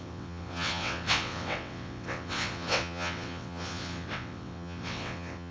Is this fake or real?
fake